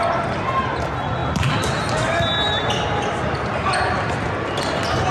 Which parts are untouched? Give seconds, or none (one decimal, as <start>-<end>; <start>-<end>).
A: 0.0-5.1